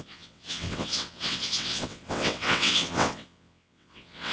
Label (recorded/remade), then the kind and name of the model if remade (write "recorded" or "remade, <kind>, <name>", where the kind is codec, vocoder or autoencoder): remade, vocoder, WaveNeXt